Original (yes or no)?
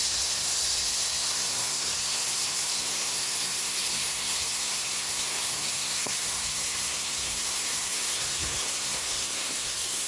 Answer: no